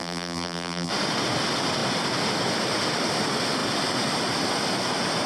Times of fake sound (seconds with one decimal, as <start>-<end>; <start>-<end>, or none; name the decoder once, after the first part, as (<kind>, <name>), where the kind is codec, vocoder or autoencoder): 0.0-0.9 (vocoder, BigVGAN v2)